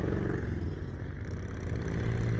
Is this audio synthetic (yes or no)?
no